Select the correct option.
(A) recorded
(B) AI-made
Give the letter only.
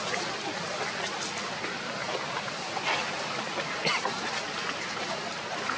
A